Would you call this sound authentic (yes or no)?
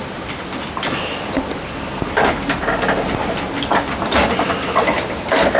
yes